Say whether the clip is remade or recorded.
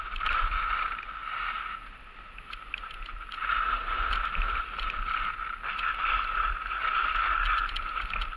recorded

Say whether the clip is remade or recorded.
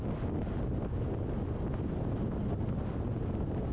recorded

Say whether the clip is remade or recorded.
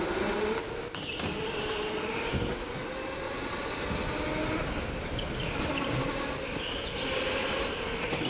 recorded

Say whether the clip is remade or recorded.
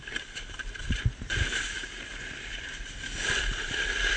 remade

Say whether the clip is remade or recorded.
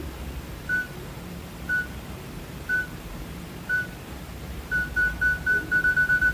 remade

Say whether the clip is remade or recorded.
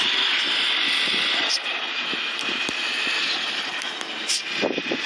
recorded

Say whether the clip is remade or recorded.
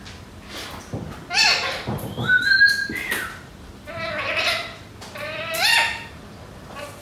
recorded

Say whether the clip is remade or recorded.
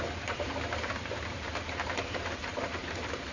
remade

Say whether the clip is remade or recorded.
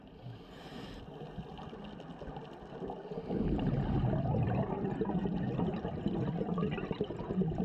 recorded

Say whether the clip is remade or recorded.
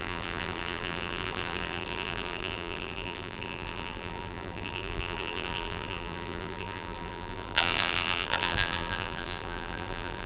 remade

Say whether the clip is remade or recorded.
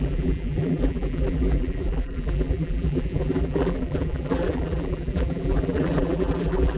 remade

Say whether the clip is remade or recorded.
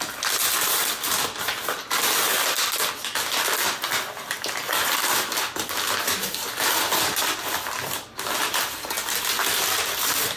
recorded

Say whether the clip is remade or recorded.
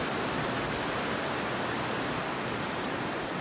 recorded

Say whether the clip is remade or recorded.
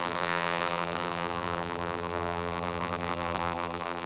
remade